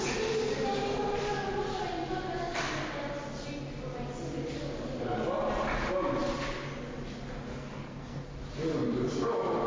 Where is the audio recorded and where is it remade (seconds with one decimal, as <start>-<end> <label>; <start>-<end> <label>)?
0.0-7.5 recorded; 7.5-8.3 remade; 8.3-9.7 recorded